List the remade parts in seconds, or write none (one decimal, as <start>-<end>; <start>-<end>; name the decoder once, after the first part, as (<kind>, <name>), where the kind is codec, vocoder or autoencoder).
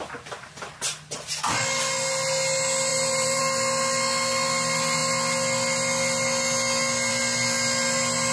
2.9-3.4 (vocoder, BigVGAN v2)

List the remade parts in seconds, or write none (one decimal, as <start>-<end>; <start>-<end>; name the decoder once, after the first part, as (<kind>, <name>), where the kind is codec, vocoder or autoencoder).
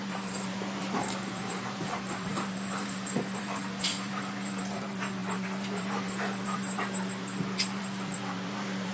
0.0-8.9 (vocoder, BigVGAN v2)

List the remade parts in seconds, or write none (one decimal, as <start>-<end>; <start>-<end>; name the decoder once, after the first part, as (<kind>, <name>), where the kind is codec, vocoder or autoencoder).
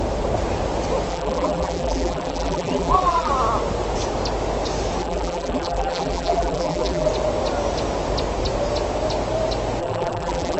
1.1-3.3 (vocoder, BigVGAN v2); 5.0-7.1; 9.8-10.6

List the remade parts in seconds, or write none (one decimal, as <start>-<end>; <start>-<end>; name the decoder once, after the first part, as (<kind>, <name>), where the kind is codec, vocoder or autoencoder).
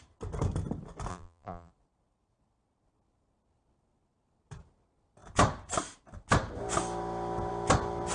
1.1-1.7 (vocoder, BigVGAN v2)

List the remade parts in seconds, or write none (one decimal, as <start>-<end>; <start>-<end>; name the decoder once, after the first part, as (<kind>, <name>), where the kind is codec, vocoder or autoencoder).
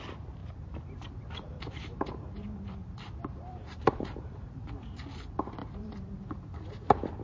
0.4-4.7 (vocoder, BigVGAN v2); 5.6-6.6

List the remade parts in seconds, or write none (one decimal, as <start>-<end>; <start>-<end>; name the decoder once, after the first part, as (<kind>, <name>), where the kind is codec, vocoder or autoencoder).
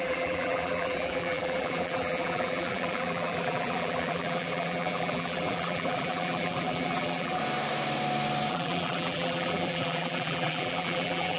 0.0-7.4 (vocoder, BigVGAN v2); 8.5-11.4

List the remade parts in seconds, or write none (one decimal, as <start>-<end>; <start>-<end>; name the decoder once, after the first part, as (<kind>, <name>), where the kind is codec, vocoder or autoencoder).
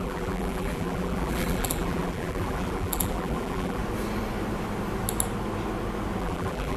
0.0-3.8 (vocoder, BigVGAN v2); 6.2-6.8